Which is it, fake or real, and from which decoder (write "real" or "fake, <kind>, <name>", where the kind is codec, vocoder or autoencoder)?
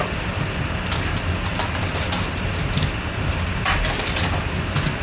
real